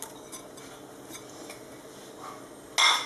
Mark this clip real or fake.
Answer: real